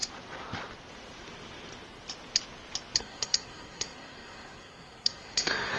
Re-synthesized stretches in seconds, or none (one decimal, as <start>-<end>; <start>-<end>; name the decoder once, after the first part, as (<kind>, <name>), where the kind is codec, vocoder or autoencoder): 3.0-5.8 (codec, SNAC)